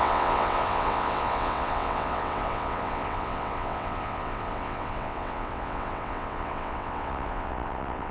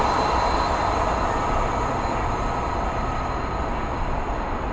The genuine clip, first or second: second